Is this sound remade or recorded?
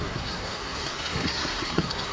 remade